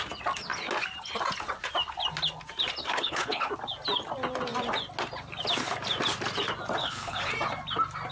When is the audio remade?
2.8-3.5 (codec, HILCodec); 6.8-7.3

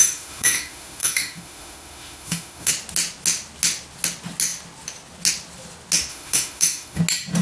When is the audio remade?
0.0-2.7 (autoencoder, DAC-VAE); 6.1-7.0

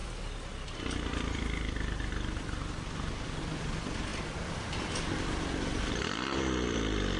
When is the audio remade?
0.0-7.2 (vocoder, BigVGAN v2)